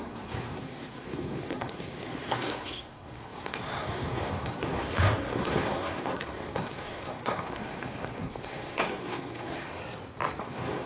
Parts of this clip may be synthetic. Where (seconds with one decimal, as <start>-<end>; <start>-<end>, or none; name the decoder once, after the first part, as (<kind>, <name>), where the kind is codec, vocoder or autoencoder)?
0.0-9.8 (codec, SNAC); 10.4-10.8

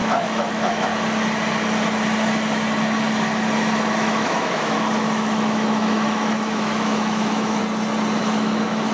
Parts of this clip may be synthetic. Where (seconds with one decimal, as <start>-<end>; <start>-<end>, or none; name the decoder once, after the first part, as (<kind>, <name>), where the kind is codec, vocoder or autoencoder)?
0.0-0.9 (autoencoder, DAC-VAE); 3.9-7.6; 8.2-8.9